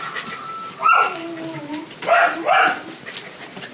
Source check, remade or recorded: recorded